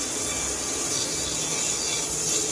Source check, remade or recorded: recorded